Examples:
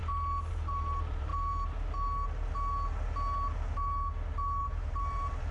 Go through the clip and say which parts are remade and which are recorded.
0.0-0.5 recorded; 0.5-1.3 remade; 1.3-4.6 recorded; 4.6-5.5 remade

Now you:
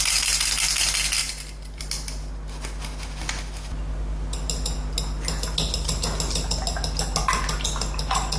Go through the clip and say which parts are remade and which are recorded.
0.0-8.4 recorded

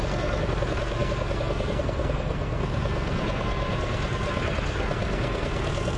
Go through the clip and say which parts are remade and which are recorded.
0.0-6.0 remade

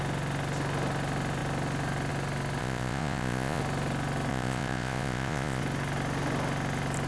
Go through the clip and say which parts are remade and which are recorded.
0.0-2.6 recorded; 2.6-3.6 remade; 3.6-4.3 recorded; 4.3-5.6 remade; 5.6-7.1 recorded

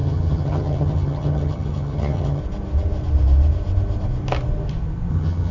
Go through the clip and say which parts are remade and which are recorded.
0.0-2.4 remade; 2.4-5.1 recorded; 5.1-5.5 remade

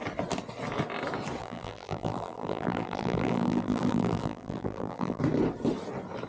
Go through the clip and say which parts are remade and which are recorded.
0.0-1.4 recorded; 1.4-5.2 remade; 5.2-6.3 recorded

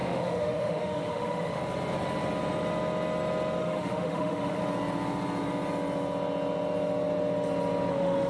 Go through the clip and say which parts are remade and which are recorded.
0.0-1.6 remade; 1.6-3.6 recorded; 3.6-4.6 remade; 4.6-7.9 recorded; 7.9-8.3 remade